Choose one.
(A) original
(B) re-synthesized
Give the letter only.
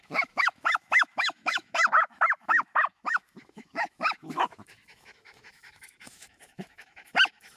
B